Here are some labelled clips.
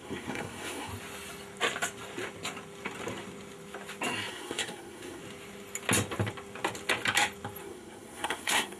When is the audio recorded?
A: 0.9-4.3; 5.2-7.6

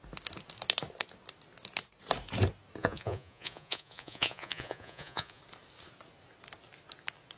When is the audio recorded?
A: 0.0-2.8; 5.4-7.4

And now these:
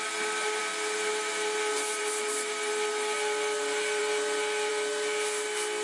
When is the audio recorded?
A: 0.0-5.8

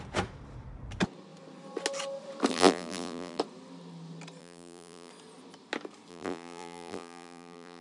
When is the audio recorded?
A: 0.0-2.5; 3.4-4.4; 5.1-6.1